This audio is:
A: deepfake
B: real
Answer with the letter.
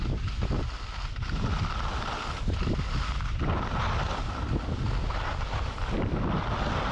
B